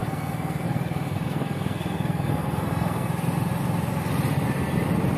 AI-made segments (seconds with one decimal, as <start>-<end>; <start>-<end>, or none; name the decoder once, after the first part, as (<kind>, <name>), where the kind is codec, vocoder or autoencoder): 0.0-3.1 (codec, SNAC)